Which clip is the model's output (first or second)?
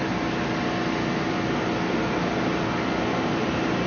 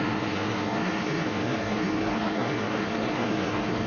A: second